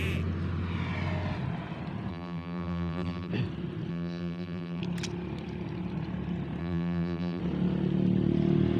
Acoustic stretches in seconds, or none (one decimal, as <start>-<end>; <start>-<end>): 0.0-2.1; 3.3-3.9; 4.8-6.6; 7.4-8.8